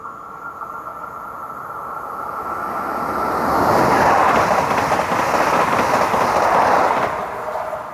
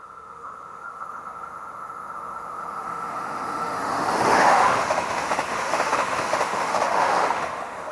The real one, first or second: first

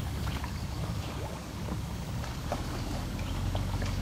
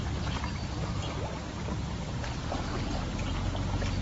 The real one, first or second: second